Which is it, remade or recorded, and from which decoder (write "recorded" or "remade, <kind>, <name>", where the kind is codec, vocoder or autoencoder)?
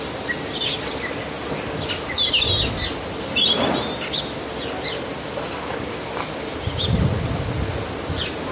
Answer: recorded